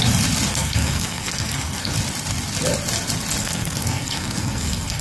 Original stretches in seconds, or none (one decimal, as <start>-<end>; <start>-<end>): 0.0-0.5; 1.9-3.4